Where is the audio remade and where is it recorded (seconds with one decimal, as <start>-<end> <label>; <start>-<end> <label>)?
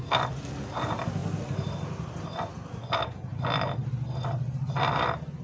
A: 0.0-5.4 recorded